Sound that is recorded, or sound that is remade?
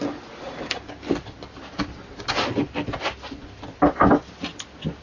recorded